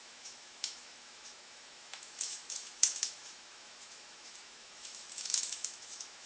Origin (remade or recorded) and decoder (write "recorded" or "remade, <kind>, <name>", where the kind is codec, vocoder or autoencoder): remade, autoencoder, DAC-VAE